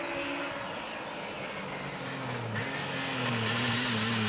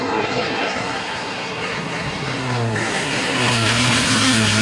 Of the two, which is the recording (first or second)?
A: first